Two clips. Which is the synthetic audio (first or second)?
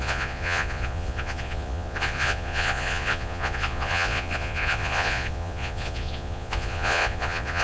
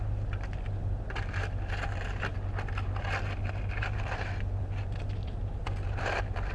first